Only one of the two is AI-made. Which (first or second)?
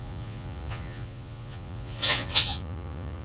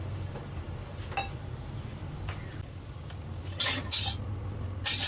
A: first